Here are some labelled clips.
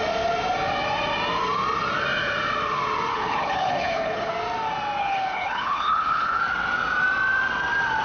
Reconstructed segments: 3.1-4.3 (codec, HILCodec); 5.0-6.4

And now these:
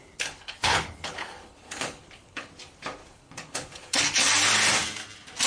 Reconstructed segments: 0.0-2.5 (codec, HILCodec); 3.0-4.0

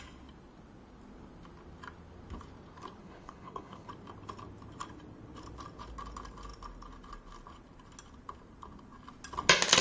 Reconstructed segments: 3.0-3.9 (codec, HILCodec)